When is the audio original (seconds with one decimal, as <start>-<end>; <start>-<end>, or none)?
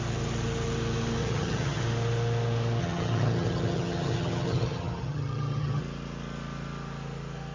0.0-1.2; 1.8-2.8; 5.8-7.5